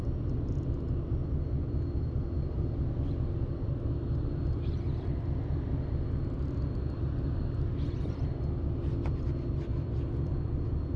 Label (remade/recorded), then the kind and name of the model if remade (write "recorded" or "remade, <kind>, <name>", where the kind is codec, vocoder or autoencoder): recorded